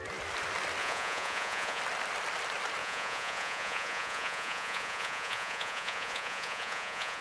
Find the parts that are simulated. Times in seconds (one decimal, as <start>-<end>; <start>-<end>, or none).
0.8-1.8; 2.8-7.2